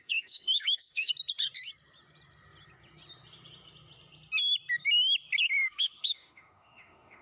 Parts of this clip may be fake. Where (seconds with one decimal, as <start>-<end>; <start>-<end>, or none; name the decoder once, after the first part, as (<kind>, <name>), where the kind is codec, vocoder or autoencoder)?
0.0-1.1 (autoencoder, DAC-VAE); 5.4-7.2